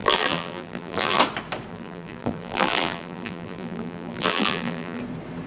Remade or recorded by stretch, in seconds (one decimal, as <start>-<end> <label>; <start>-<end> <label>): 0.0-1.2 remade; 1.2-1.7 recorded; 1.7-5.0 remade; 5.0-5.5 recorded